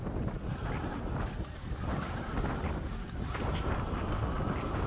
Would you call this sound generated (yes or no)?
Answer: no